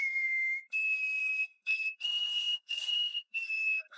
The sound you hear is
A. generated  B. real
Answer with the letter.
A